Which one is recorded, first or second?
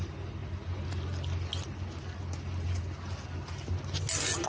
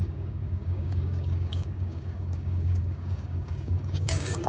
first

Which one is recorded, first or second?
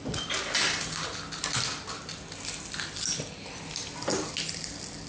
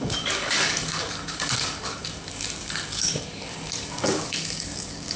first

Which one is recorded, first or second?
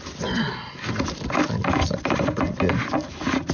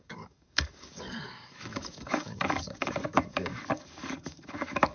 first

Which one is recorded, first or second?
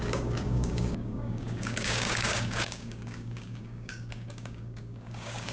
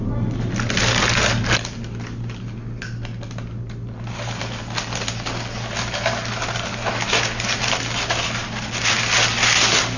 second